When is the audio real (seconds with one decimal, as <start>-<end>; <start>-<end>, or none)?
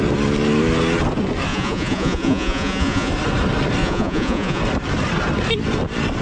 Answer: 0.0-1.5; 3.1-3.8; 4.6-6.2